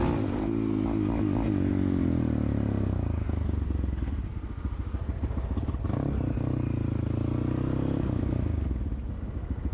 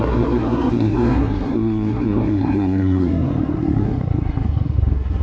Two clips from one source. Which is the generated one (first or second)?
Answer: second